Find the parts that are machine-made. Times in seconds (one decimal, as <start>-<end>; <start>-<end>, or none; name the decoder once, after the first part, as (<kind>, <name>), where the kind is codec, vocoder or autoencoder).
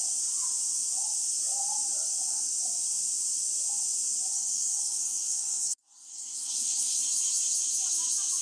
4.3-7.0 (codec, SNAC)